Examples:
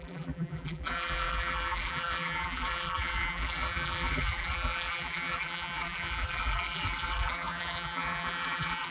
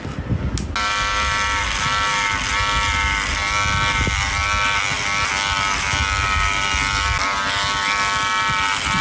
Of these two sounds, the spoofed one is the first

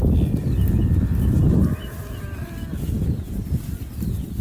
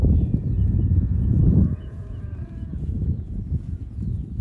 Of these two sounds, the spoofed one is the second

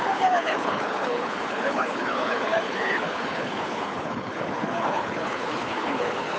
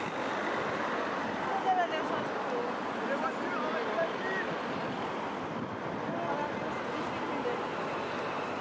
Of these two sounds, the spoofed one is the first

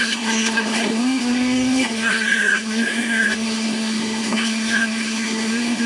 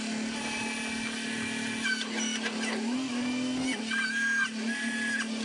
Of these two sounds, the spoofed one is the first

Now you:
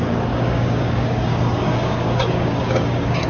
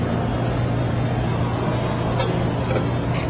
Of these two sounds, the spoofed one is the first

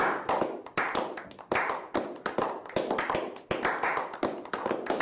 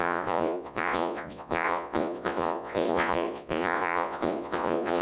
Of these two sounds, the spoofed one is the second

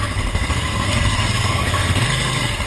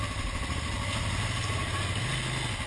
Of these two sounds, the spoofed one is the first